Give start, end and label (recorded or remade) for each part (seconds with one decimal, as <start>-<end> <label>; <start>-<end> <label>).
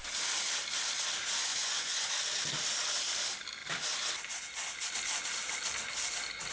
0.0-1.5 recorded; 1.5-2.1 remade; 2.1-6.5 recorded